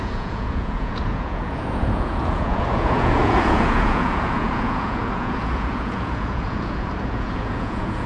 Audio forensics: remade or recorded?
remade